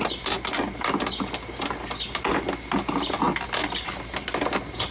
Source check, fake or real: real